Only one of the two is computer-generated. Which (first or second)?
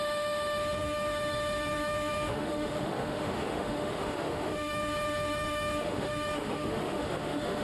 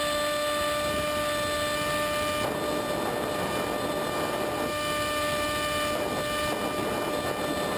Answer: first